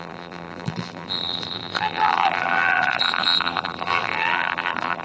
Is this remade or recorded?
remade